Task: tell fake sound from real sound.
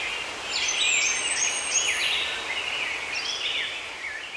real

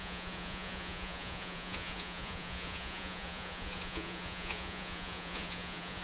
fake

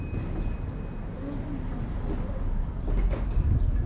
real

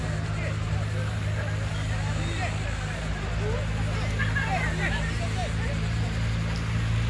real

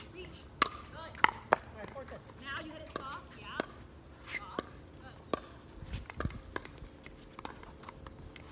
real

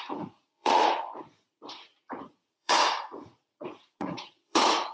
fake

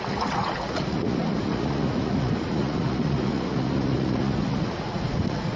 fake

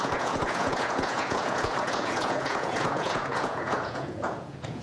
fake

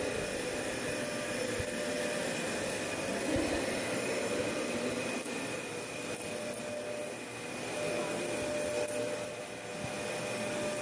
real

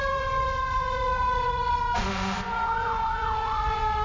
fake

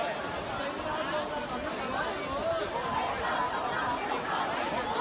real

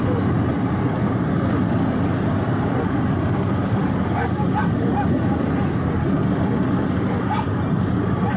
real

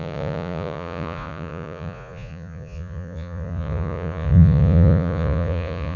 fake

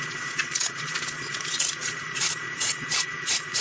fake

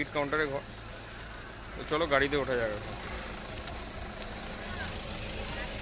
real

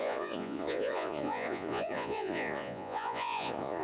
fake